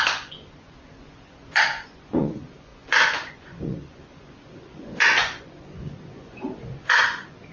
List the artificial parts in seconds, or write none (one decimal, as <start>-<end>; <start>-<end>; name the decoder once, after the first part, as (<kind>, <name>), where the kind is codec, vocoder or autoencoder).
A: 0.0-7.5 (vocoder, Vocos)

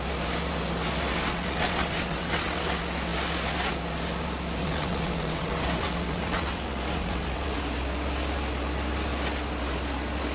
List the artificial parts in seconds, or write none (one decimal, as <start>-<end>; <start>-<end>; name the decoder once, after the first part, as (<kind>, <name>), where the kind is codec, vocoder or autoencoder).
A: 1.1-2.7 (vocoder, WaveNeXt); 4.6-7.6

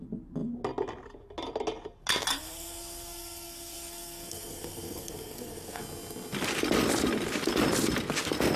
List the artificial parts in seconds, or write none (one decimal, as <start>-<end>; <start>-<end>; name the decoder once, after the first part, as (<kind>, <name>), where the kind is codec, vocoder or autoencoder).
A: 2.3-5.8 (codec, SNAC)

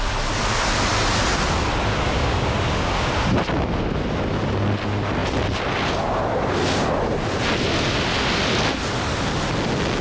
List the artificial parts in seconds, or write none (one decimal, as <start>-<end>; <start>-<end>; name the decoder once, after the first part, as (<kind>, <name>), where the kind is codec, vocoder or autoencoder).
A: 1.9-3.1 (codec, DAC)

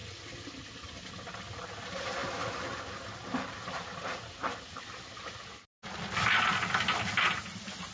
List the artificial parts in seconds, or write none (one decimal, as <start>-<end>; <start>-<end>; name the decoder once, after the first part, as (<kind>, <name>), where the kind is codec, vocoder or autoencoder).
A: none

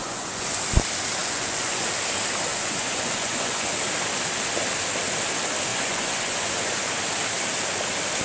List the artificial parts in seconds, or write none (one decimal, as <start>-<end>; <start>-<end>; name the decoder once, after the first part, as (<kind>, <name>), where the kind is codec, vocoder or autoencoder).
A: 0.0-0.6 (vocoder, Vocos); 1.2-1.9; 2.5-3.7; 5.7-6.9

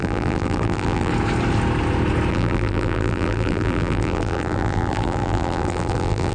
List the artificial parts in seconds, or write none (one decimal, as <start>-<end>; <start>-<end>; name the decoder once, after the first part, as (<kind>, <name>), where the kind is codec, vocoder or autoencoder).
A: 0.0-1.1 (vocoder, BigVGAN v2); 2.3-6.3